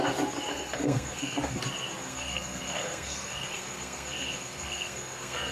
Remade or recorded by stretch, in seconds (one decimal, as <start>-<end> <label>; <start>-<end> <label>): 0.0-0.5 recorded; 0.5-1.6 remade; 1.6-2.1 recorded; 2.1-5.5 remade